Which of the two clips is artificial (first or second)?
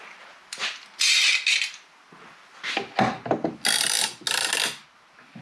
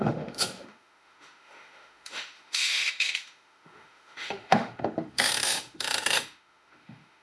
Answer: second